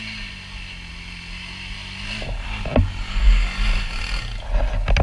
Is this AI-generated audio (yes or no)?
no